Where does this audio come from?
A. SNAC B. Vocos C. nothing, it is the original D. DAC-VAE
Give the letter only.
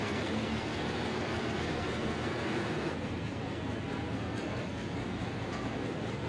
A